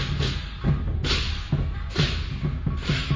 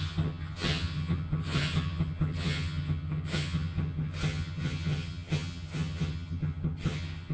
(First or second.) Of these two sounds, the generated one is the second